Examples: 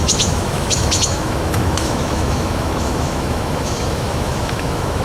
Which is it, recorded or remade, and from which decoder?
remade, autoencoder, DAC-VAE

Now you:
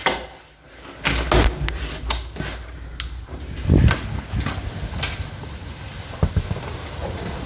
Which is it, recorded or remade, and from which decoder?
recorded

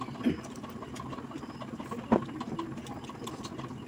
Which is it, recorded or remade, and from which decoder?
recorded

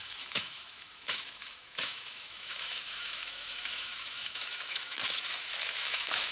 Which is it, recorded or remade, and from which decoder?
remade, autoencoder, DAC-VAE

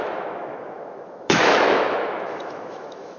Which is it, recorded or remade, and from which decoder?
remade, autoencoder, DAC-VAE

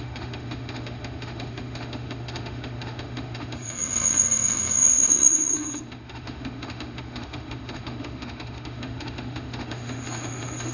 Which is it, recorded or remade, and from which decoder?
remade, autoencoder, DAC-VAE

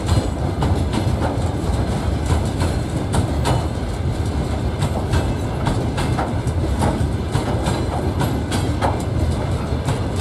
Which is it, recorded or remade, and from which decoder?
recorded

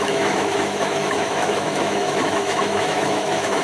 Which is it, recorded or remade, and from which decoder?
remade, autoencoder, DAC-VAE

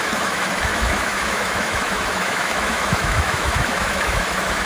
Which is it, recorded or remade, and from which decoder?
remade, autoencoder, DAC-VAE